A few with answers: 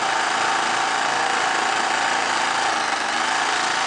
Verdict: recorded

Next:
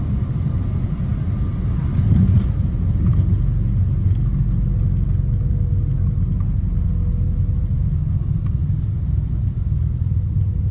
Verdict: recorded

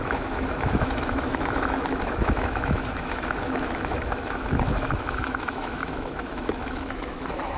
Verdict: remade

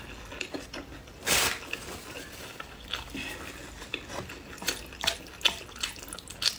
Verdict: recorded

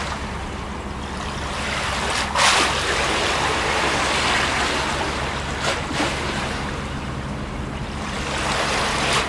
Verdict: recorded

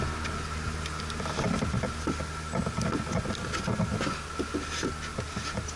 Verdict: recorded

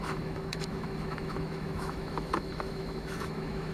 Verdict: remade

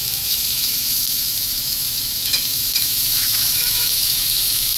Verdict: remade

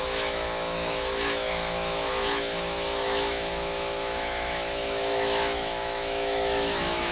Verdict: remade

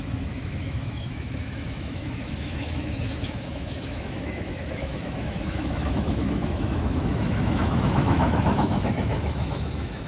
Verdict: remade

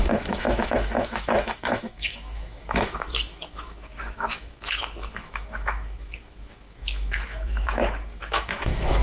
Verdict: remade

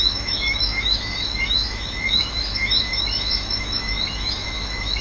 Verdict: remade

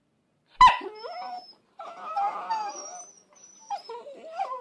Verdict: recorded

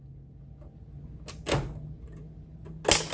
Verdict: recorded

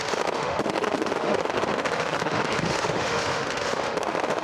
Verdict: remade